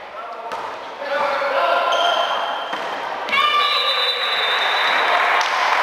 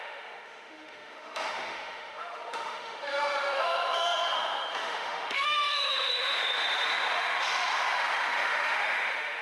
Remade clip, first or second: second